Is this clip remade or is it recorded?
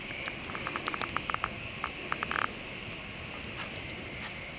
recorded